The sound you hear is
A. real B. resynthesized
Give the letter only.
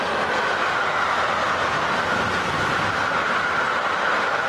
A